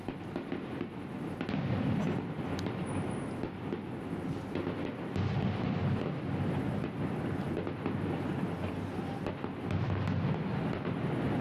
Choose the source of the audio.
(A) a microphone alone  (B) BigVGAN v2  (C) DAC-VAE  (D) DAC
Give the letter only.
A